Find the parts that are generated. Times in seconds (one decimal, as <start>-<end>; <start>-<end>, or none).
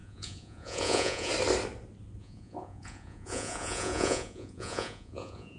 0.0-1.3; 2.2-5.6